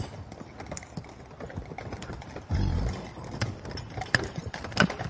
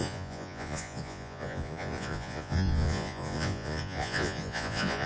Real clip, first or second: first